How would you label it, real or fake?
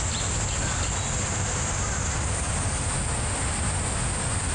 real